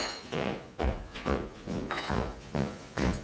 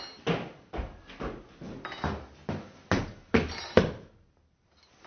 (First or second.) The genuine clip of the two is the second